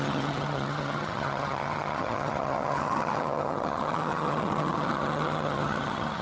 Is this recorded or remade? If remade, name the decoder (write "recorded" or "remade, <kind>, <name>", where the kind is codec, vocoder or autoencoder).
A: remade, vocoder, HiFi-GAN